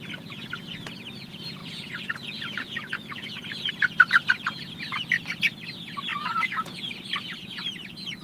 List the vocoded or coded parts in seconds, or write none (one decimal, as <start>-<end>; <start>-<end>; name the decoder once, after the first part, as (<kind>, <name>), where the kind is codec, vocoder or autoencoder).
1.6-3.7 (vocoder, Vocos); 6.1-6.9